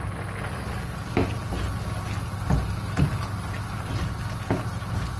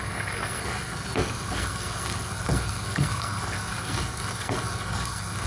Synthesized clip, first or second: second